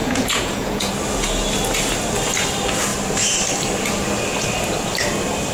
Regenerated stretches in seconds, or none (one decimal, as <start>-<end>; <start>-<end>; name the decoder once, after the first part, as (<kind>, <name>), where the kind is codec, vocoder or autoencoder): 0.0-0.9 (vocoder, Vocos)